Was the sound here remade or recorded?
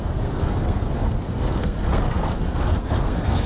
remade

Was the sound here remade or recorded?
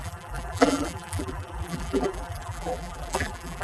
remade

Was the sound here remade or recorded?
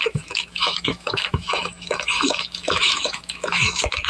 remade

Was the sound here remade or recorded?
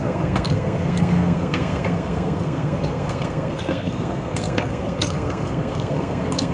remade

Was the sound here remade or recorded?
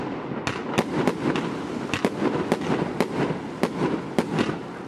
recorded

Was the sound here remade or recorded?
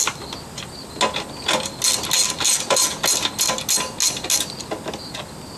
recorded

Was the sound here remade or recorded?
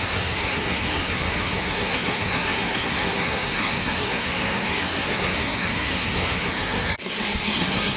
remade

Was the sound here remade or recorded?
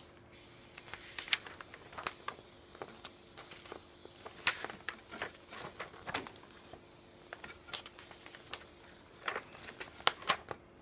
recorded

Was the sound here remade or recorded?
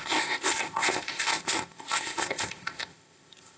remade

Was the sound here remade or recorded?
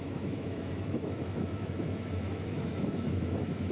remade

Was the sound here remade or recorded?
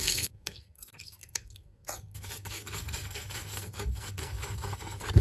remade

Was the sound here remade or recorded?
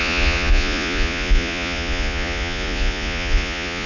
remade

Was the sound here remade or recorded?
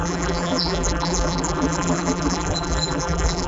remade